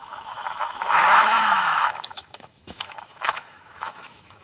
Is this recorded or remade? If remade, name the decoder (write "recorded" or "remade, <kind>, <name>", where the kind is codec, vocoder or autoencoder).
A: remade, autoencoder, DAC-VAE